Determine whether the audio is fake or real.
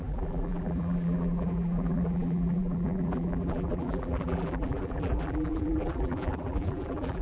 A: fake